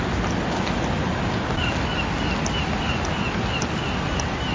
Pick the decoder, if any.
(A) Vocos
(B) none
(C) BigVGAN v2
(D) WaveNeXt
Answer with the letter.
B